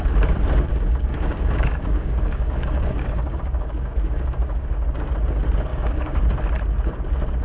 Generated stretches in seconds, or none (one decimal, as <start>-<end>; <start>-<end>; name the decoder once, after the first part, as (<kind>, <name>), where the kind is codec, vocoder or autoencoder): 0.7-4.7 (codec, DAC); 5.7-6.2